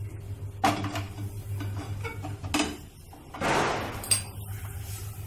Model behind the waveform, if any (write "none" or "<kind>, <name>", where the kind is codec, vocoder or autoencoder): none